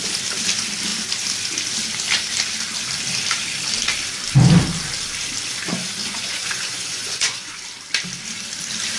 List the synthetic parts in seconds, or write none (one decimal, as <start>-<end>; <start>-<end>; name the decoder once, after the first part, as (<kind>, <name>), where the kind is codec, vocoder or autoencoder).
6.0-7.6 (vocoder, Vocos)